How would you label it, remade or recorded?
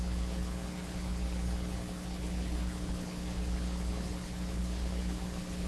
remade